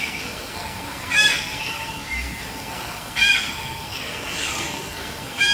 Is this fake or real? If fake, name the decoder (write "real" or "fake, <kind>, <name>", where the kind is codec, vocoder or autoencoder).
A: fake, codec, SNAC